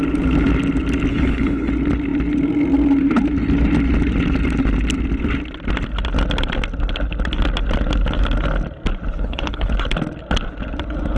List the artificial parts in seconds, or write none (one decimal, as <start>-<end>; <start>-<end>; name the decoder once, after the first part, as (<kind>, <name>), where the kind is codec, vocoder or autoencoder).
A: 1.1-1.7 (codec, HILCodec); 9.1-9.7